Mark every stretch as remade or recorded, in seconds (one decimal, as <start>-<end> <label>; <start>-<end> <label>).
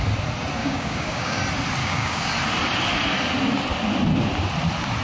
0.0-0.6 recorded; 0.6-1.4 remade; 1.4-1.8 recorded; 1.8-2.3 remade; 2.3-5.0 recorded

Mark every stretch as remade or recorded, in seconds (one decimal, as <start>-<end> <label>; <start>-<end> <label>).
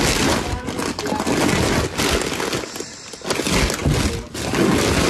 0.0-5.1 recorded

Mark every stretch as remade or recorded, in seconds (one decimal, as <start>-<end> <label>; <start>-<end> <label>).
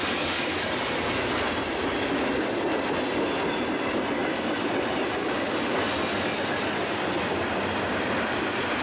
0.0-0.6 remade; 0.6-8.8 recorded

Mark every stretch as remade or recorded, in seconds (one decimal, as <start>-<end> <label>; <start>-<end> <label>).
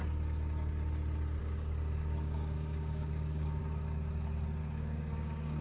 0.0-1.4 recorded; 1.4-3.6 remade; 3.6-4.6 recorded; 4.6-5.6 remade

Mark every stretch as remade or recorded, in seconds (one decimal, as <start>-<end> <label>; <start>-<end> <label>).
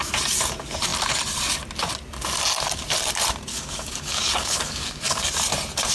0.0-3.5 recorded; 3.5-5.3 remade; 5.3-5.9 recorded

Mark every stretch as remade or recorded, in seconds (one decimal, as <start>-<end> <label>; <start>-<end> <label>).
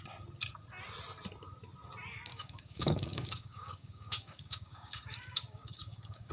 0.0-2.3 recorded; 2.3-6.3 remade